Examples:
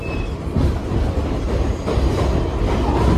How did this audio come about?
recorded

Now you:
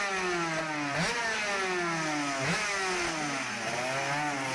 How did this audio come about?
recorded